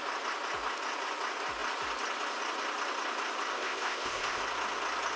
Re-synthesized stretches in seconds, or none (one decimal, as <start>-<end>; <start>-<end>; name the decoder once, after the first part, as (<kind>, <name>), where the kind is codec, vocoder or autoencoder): 3.5-4.4 (codec, ZipCodec)